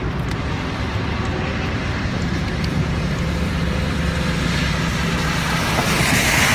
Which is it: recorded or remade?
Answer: recorded